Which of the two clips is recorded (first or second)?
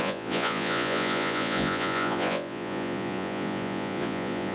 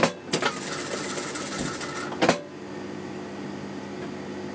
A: second